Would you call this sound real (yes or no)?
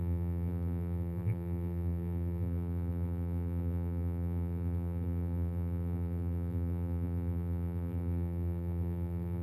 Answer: no